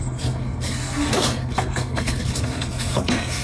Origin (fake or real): fake